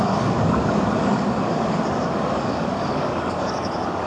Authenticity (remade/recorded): remade